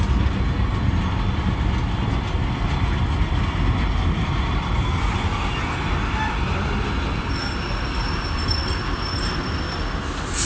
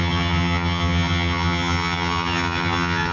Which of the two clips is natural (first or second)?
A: first